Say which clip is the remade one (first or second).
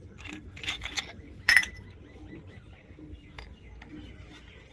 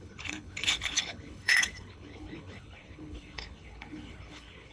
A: second